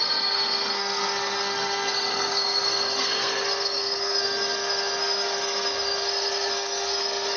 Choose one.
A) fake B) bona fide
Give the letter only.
A